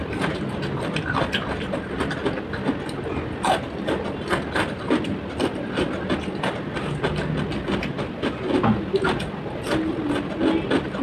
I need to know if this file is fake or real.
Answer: real